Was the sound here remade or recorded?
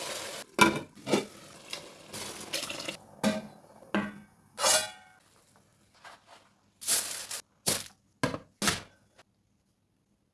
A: recorded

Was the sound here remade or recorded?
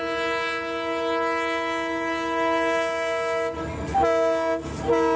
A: recorded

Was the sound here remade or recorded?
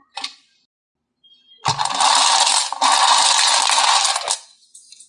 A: recorded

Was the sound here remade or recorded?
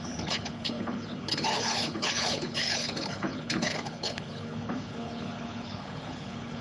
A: remade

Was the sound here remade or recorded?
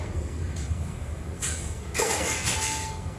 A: remade